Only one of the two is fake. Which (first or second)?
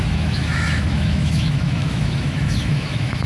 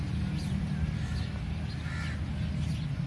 first